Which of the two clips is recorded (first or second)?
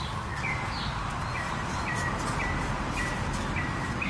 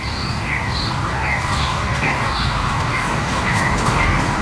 first